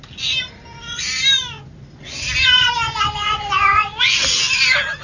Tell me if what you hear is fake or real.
real